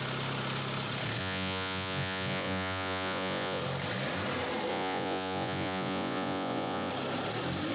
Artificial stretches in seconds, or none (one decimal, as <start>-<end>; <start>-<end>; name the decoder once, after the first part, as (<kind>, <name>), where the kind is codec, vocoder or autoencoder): 1.2-3.6 (vocoder, Vocos); 4.7-6.9